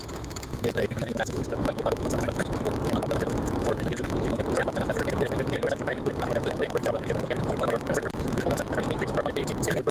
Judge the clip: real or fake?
fake